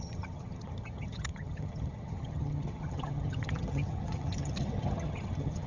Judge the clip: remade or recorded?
remade